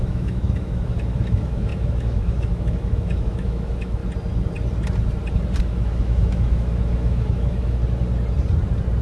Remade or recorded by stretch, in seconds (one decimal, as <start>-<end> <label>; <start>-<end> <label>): 0.0-4.0 remade; 4.0-5.6 recorded; 5.6-7.8 remade; 7.8-9.0 recorded